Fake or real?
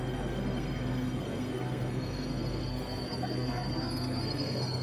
fake